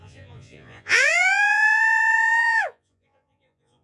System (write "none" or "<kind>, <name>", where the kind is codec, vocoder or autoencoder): vocoder, Vocos